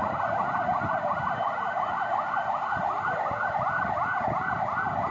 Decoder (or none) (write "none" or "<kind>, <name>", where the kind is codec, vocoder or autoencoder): none